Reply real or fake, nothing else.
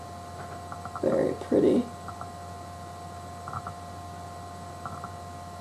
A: real